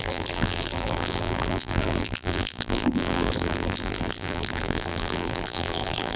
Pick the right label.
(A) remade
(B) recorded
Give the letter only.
A